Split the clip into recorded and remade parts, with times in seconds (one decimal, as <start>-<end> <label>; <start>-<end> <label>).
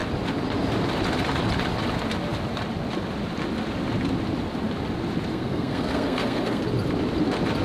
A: 0.0-5.3 recorded; 5.3-6.6 remade; 6.6-7.6 recorded